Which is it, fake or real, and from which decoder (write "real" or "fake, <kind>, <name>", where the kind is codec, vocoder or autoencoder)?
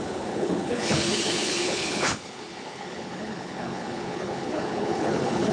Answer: fake, codec, HILCodec